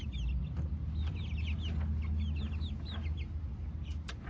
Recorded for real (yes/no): yes